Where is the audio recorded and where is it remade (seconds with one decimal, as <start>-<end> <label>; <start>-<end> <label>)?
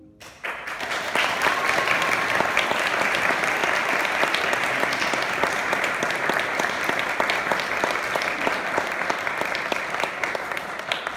0.0-11.2 recorded